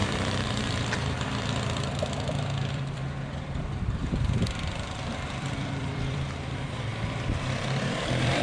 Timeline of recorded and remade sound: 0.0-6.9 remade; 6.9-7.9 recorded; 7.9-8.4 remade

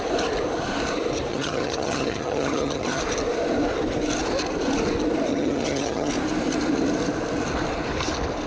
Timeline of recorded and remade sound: 0.0-1.3 recorded; 1.3-3.0 remade; 3.0-5.3 recorded; 5.3-6.1 remade; 6.1-8.5 recorded

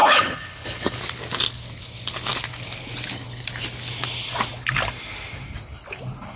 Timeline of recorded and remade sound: 0.0-1.0 remade; 1.0-6.4 recorded

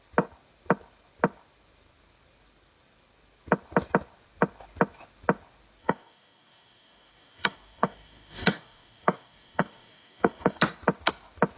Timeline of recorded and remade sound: 0.0-5.8 recorded; 5.8-10.6 remade; 10.6-11.6 recorded

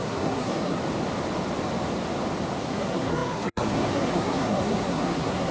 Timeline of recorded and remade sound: 0.0-0.8 remade; 0.8-2.6 recorded; 2.6-5.5 remade

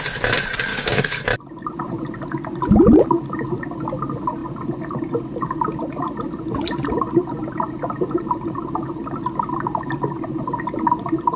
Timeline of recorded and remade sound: 0.0-0.7 recorded; 0.7-1.2 remade; 1.2-11.4 recorded

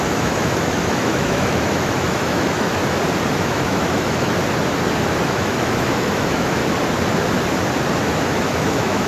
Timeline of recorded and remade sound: 0.0-2.8 remade; 2.8-3.3 recorded; 3.3-4.3 remade; 4.3-5.2 recorded; 5.2-6.6 remade; 6.6-8.0 recorded; 8.0-9.1 remade

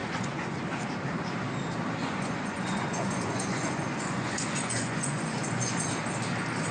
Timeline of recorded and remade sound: 0.0-0.6 remade; 0.6-2.0 recorded; 2.0-5.9 remade; 5.9-6.7 recorded